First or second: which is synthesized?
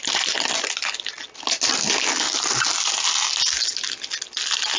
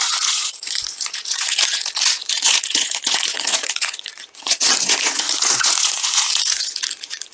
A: second